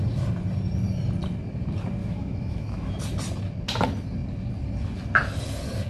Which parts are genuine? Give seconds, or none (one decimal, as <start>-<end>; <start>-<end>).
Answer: 0.0-2.0; 2.9-5.9